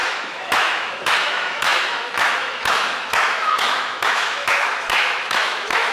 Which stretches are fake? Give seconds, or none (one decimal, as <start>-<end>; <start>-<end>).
0.0-5.9

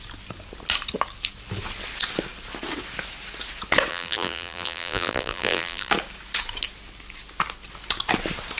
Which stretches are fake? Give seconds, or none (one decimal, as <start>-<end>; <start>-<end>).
3.9-5.9

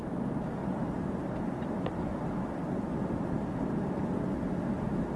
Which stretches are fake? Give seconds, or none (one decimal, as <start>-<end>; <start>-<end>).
0.6-3.4

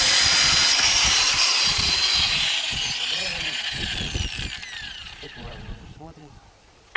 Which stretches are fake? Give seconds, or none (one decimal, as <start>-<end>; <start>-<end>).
0.0-3.9; 4.8-7.0

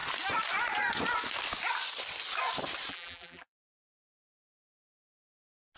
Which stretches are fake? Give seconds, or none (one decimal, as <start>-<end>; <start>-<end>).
2.9-4.6

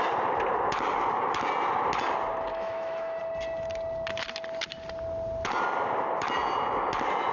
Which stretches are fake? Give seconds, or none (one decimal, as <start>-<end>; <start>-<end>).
2.5-3.2

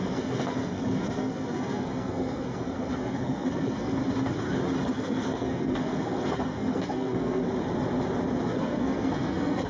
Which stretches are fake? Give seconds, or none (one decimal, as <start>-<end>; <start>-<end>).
0.0-4.0; 4.9-7.4; 8.4-9.7